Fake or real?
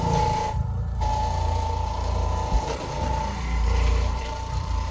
fake